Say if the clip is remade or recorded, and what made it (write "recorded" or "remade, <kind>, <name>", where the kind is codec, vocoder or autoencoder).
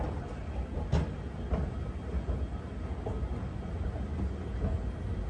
recorded